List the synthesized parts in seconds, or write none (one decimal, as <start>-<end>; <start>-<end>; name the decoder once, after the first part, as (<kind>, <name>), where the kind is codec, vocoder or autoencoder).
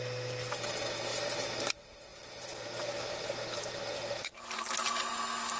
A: 1.1-1.7 (vocoder, BigVGAN v2); 2.1-3.8; 4.2-5.1